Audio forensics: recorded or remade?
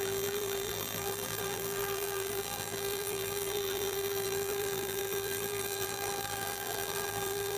remade